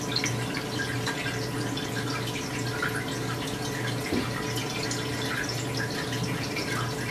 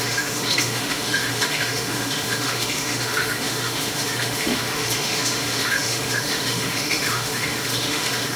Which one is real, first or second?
first